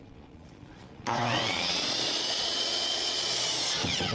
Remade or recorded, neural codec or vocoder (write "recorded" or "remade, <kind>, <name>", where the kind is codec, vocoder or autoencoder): remade, vocoder, Vocos